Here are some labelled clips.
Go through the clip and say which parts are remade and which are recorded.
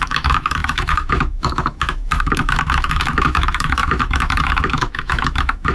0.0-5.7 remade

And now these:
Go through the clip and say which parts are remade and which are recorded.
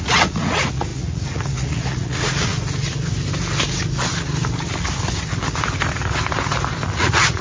0.0-2.5 remade; 2.5-6.9 recorded; 6.9-7.4 remade